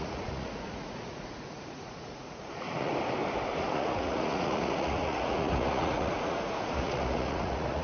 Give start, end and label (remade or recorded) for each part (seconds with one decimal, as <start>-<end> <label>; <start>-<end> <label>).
0.0-2.9 remade; 2.9-3.6 recorded; 3.6-7.8 remade